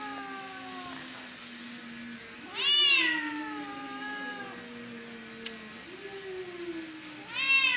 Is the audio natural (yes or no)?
yes